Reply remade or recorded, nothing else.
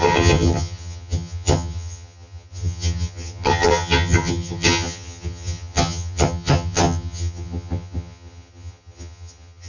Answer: remade